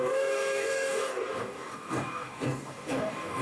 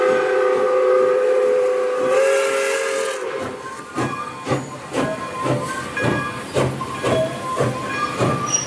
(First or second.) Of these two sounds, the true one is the second